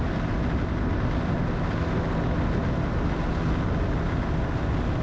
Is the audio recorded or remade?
recorded